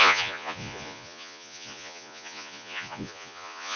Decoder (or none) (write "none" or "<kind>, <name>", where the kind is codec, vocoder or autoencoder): vocoder, Vocos